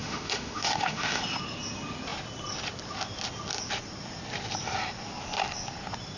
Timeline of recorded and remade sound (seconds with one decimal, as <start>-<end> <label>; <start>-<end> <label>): 0.0-1.2 remade; 1.2-6.2 recorded